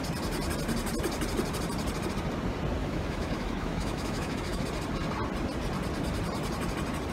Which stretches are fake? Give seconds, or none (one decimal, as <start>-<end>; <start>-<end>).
2.8-4.6